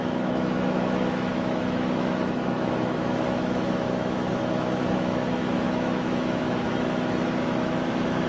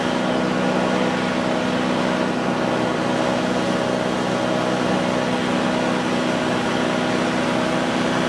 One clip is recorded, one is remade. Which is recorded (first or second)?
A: second